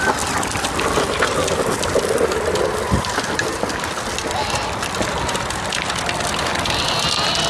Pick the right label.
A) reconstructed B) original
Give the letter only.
B